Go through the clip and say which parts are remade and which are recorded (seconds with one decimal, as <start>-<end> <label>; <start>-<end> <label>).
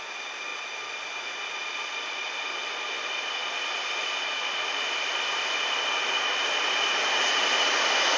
0.0-8.2 recorded